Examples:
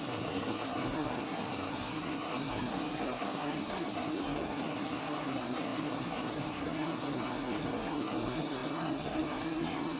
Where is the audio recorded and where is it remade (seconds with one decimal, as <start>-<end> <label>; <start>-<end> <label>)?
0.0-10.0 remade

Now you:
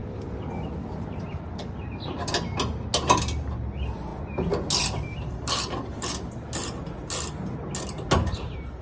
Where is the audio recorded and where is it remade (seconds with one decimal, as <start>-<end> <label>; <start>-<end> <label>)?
0.0-8.8 recorded

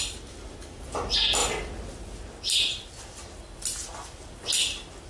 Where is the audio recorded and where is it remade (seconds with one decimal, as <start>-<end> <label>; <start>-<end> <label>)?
0.0-5.1 recorded

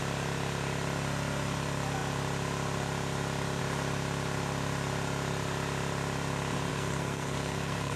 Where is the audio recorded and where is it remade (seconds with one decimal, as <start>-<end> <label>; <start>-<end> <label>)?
0.0-6.7 recorded; 6.7-8.0 remade

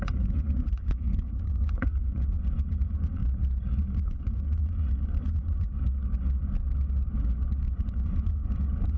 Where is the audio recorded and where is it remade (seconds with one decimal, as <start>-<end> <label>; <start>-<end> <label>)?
0.0-3.2 remade; 3.2-3.8 recorded; 3.8-5.7 remade; 5.7-7.7 recorded; 7.7-9.0 remade

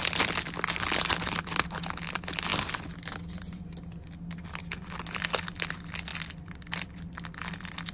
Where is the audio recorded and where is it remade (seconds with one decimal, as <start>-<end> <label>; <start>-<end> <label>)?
0.0-7.9 recorded

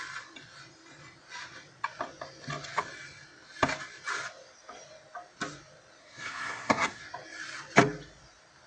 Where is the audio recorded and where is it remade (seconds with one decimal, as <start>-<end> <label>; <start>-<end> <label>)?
0.0-6.0 recorded; 6.0-7.0 remade; 7.0-8.7 recorded